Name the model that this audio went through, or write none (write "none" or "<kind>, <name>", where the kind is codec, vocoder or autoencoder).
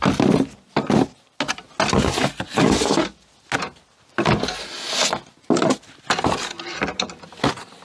none